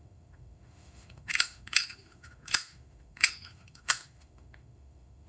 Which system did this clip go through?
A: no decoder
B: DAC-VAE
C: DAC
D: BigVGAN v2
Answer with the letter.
B